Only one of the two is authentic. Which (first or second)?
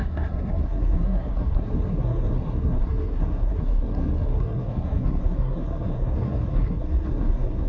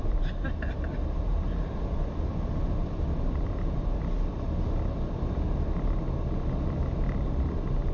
second